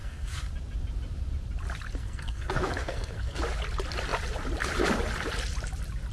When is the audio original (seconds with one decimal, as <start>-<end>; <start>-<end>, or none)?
0.5-2.0; 3.4-6.1